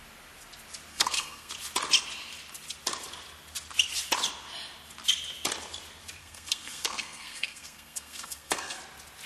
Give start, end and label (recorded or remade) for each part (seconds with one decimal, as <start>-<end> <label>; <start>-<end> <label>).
0.0-0.9 recorded; 0.9-1.5 remade; 1.5-6.2 recorded; 6.2-8.8 remade; 8.8-9.3 recorded